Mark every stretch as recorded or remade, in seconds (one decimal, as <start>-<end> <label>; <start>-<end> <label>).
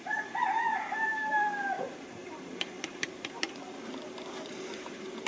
0.0-5.3 remade